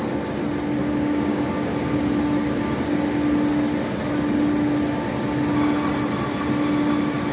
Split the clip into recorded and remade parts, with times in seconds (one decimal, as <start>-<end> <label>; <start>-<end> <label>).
0.0-0.8 recorded; 0.8-2.0 remade; 2.0-7.3 recorded